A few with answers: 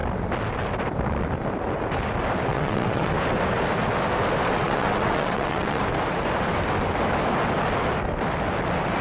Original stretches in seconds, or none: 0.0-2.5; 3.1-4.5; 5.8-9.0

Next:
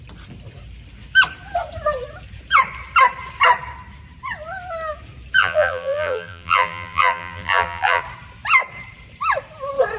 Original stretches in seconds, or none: 0.0-5.4; 8.0-10.0

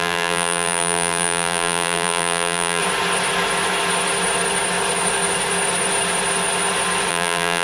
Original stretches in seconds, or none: 2.8-7.1

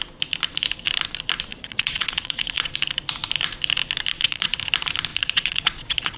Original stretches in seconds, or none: 0.0-1.5; 2.7-4.1; 4.6-5.1

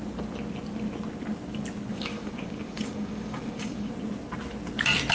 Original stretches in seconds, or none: 0.0-1.9; 3.9-5.1

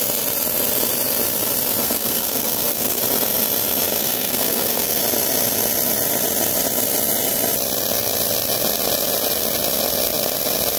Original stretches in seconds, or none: 0.0-1.8; 3.0-4.0; 5.0-10.8

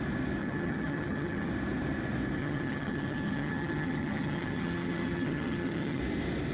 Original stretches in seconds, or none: 0.0-0.4; 1.5-2.4; 6.0-6.5

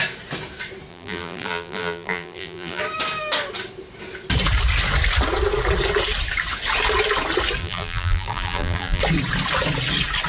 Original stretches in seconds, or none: 0.0-0.9; 2.8-7.6; 9.0-10.3